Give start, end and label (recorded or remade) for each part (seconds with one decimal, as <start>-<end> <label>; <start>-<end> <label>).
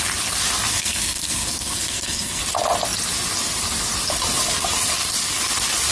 0.0-0.7 recorded; 0.7-2.4 remade; 2.4-5.9 recorded